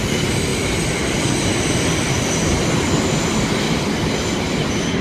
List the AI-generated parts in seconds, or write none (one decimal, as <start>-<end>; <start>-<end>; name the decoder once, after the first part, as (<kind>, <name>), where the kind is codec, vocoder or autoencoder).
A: none